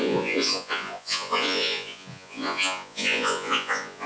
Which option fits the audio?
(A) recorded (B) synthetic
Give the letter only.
B